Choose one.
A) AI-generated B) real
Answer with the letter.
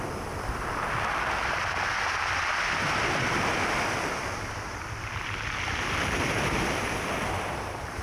B